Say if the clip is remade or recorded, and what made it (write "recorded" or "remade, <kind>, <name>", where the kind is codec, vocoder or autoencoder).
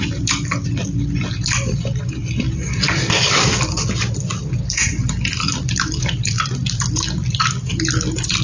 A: remade, vocoder, BigVGAN v2